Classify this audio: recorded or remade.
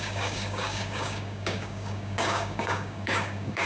remade